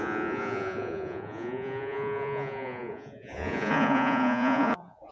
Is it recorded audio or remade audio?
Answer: remade